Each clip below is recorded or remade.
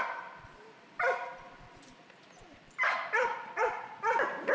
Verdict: remade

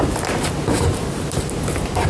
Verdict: remade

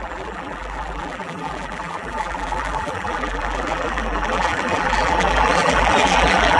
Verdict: remade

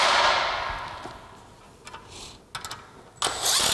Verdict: recorded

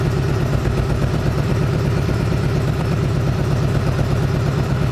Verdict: remade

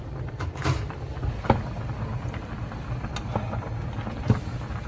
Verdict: recorded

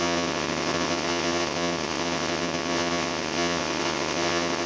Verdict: remade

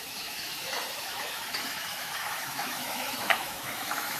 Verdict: remade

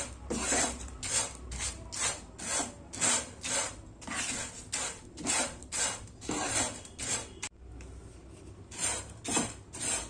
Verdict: recorded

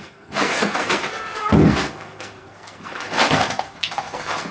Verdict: remade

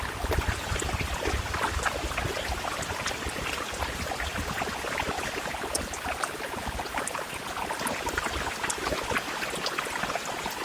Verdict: recorded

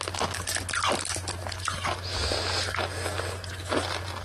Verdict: recorded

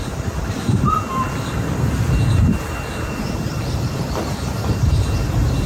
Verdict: remade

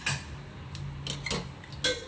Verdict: recorded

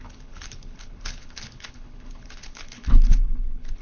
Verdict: remade